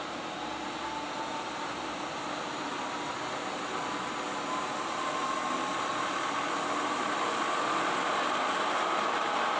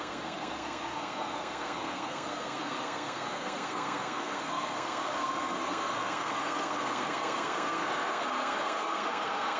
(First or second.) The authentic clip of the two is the first